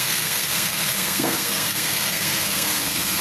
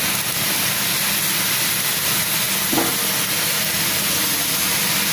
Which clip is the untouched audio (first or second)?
second